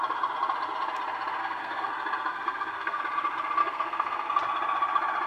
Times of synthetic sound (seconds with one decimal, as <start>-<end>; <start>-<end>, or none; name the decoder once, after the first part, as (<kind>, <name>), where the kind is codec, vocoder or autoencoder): 1.4-1.9 (codec, SNAC); 2.3-3.0; 3.6-4.3